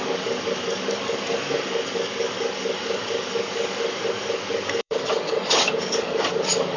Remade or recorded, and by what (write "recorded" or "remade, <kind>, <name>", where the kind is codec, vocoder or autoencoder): remade, codec, DAC